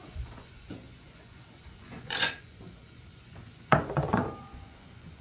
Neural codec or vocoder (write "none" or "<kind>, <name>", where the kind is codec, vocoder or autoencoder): vocoder, Vocos